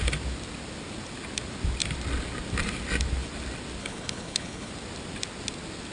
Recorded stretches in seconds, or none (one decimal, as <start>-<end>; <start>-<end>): 0.0-3.8; 4.7-5.9

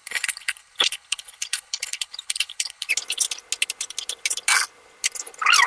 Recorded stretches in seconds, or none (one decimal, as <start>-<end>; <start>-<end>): 2.9-5.7

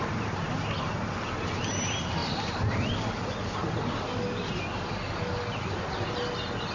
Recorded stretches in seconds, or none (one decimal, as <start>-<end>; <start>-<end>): 0.0-6.7

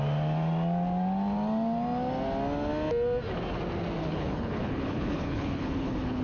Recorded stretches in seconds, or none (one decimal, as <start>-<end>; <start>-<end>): 0.0-4.0

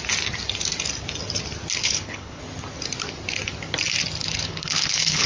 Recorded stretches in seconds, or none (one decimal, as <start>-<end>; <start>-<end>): 0.0-1.8; 2.4-4.2